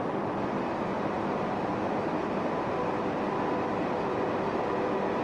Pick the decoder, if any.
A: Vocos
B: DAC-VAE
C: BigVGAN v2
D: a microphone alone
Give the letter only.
D